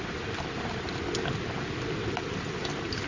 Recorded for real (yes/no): yes